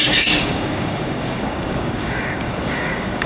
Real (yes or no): no